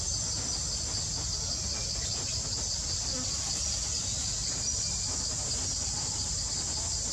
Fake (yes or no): no